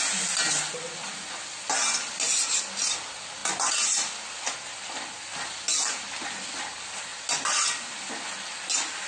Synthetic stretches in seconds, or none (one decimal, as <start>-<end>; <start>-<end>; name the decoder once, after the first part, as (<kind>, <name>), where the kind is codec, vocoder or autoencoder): none